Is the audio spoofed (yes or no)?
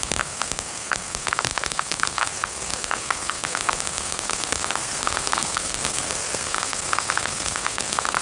yes